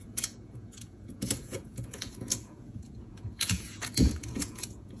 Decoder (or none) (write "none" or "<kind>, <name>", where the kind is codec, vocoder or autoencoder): vocoder, Vocos